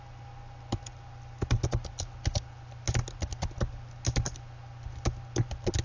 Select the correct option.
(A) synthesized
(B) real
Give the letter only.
B